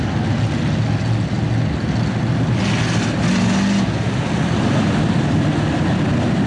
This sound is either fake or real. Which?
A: real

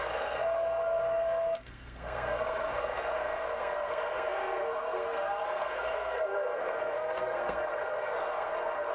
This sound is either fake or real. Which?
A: fake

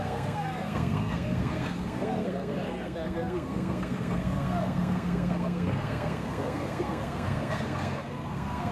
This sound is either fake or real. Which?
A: fake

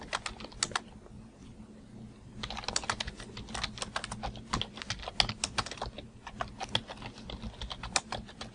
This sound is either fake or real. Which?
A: real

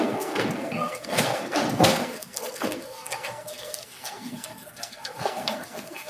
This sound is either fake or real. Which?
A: fake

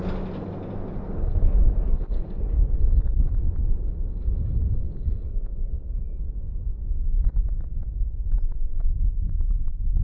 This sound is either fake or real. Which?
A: real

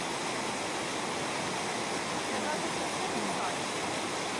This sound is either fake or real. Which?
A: real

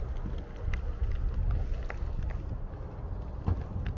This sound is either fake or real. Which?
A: real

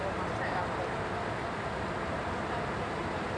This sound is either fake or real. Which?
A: real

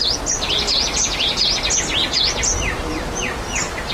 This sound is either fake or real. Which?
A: real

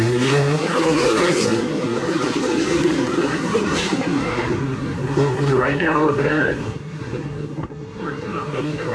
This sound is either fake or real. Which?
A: fake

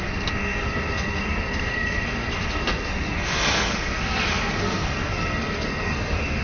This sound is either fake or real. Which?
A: fake